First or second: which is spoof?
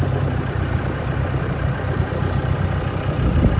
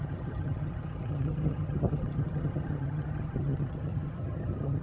second